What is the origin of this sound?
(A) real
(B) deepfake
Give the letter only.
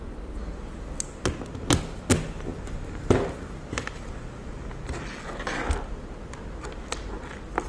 A